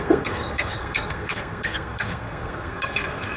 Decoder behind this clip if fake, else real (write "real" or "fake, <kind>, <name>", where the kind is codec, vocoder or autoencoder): fake, codec, SNAC